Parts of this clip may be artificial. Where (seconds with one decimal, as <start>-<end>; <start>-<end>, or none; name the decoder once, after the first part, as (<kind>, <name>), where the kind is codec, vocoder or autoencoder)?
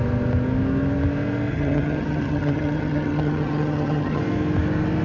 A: 1.5-4.2 (vocoder, HiFi-GAN)